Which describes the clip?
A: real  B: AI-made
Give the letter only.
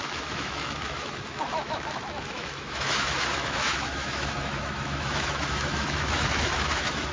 B